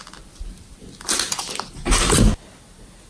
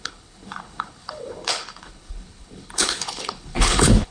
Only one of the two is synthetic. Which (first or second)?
second